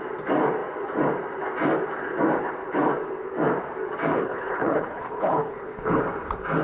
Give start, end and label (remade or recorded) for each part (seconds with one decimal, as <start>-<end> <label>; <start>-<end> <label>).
0.0-4.1 recorded; 4.1-6.0 remade; 6.0-6.6 recorded